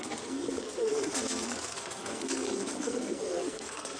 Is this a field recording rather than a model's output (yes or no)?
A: no